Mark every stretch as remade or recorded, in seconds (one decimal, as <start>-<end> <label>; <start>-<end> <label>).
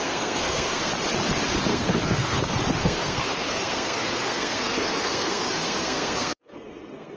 0.0-0.9 remade; 0.9-1.7 recorded; 1.7-2.4 remade; 2.4-2.8 recorded; 2.8-7.2 remade